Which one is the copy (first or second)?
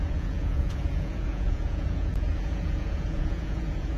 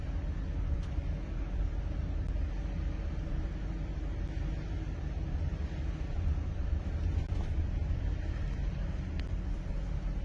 first